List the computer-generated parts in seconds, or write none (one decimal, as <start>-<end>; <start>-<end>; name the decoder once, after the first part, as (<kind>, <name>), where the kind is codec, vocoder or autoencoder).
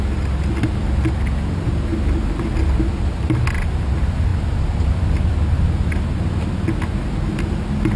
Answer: none